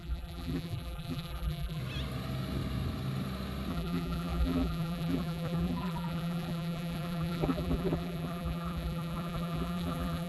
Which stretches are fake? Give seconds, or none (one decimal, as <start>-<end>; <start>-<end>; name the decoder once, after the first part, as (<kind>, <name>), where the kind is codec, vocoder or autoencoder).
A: 0.0-1.8 (vocoder, BigVGAN v2); 3.7-10.3